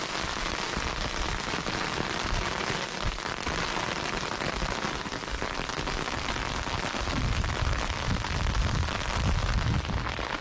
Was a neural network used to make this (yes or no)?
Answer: no